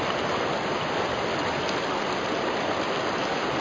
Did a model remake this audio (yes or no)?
no